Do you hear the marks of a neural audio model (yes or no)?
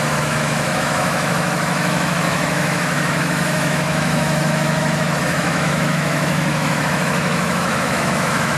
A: yes